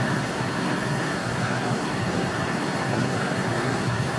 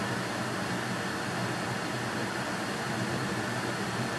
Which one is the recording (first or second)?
second